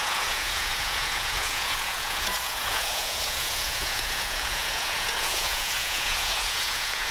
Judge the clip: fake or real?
fake